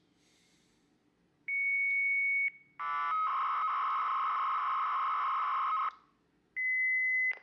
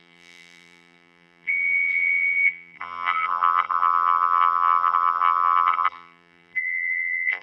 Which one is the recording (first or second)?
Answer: first